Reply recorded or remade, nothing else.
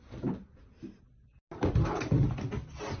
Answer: recorded